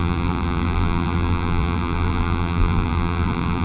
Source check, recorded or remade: remade